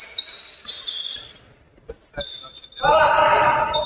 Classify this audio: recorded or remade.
recorded